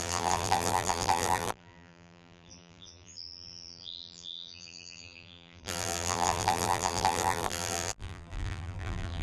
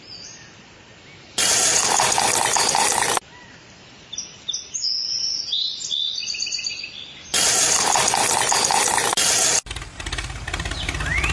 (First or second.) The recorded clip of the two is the second